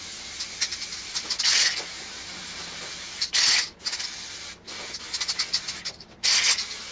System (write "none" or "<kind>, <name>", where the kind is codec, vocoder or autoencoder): none